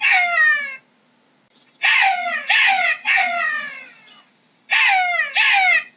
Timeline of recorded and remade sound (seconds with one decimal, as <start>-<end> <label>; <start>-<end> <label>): 0.0-1.9 recorded; 1.9-4.3 remade; 4.3-6.0 recorded